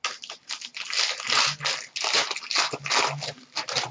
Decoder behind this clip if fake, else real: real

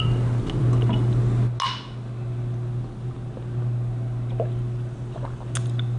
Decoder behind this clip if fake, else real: real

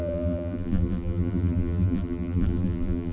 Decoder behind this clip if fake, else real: fake, vocoder, BigVGAN v2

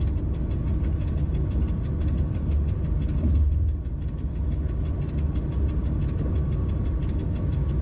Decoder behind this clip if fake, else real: real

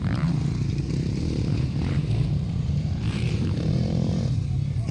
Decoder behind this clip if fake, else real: fake, vocoder, BigVGAN v2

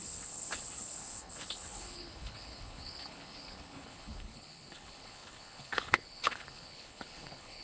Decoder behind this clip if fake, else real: fake, codec, HILCodec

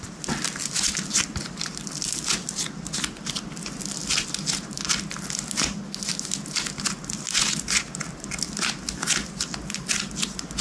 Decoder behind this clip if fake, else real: real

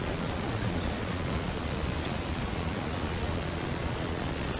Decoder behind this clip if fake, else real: fake, vocoder, Vocos